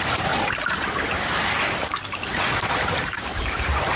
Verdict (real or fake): fake